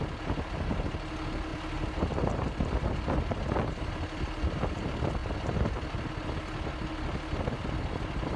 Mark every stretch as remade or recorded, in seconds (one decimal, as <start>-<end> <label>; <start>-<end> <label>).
0.0-1.5 recorded; 1.5-4.8 remade; 4.8-5.2 recorded; 5.2-6.3 remade; 6.3-8.4 recorded